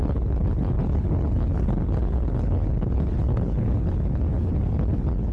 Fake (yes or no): yes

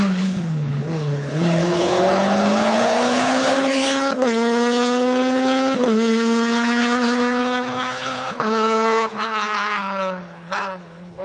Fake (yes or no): yes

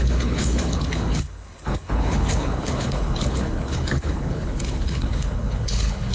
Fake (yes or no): yes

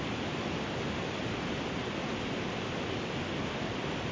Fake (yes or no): no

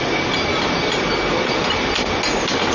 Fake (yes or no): no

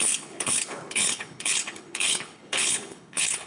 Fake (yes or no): yes